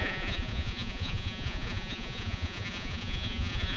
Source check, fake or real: fake